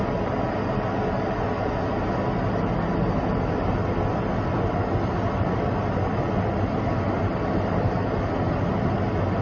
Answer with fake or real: real